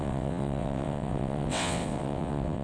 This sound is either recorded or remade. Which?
remade